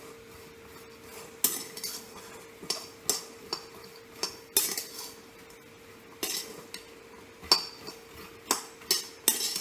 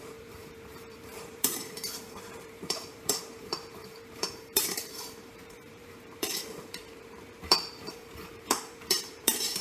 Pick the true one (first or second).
first